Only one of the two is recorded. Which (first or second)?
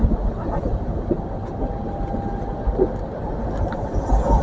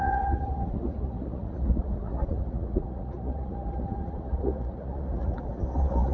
first